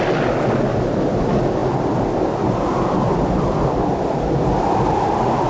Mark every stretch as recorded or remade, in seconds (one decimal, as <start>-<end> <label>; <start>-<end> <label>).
0.0-5.5 recorded